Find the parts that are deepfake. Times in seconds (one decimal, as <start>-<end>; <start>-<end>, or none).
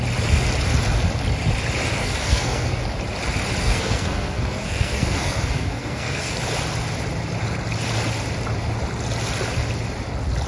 2.0-2.8; 3.6-6.3